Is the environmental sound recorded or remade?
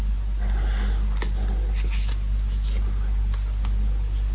recorded